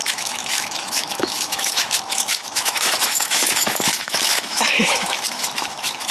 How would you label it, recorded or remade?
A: remade